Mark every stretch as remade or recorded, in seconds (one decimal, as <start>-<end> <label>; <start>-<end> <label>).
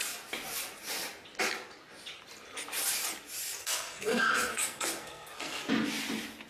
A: 0.0-3.6 recorded; 3.6-5.7 remade; 5.7-6.5 recorded